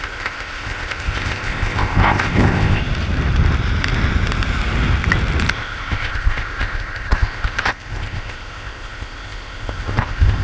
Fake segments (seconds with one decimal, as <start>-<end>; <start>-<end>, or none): 0.0-2.8; 5.5-10.4